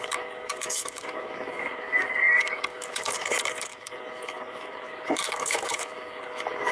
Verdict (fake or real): fake